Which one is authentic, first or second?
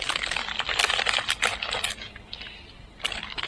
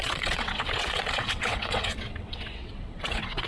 first